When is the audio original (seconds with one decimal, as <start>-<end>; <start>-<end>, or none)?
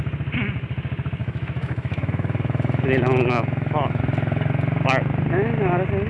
0.0-1.2; 4.0-6.1